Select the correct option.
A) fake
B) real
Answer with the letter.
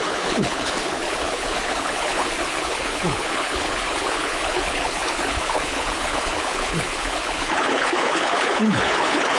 A